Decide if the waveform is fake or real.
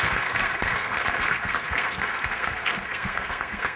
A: fake